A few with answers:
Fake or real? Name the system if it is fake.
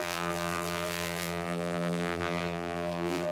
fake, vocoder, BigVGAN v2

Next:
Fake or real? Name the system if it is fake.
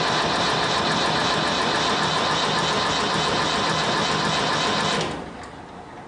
real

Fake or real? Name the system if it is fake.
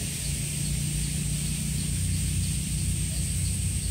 real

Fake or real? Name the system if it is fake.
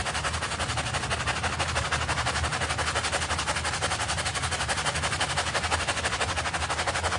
real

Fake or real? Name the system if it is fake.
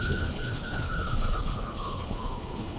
fake, codec, HILCodec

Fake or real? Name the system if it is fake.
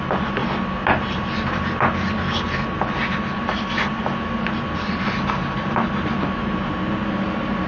real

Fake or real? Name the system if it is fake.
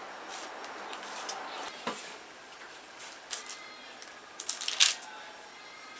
real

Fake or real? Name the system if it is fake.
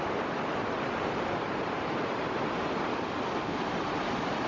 fake, vocoder, BigVGAN v2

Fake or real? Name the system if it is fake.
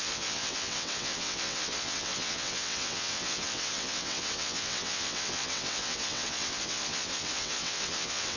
fake, vocoder, WaveNeXt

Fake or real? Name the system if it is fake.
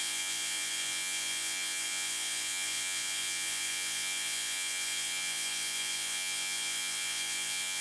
fake, vocoder, Vocos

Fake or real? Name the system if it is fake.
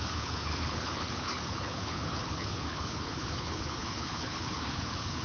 fake, codec, HILCodec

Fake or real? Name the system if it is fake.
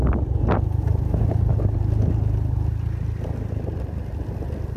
real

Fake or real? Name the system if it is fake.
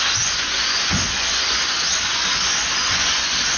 fake, vocoder, Vocos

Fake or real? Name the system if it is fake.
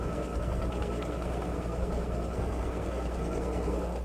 fake, codec, SNAC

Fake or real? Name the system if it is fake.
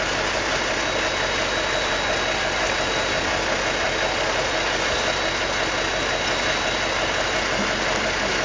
real